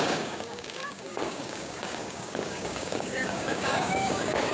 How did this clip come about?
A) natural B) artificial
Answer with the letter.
B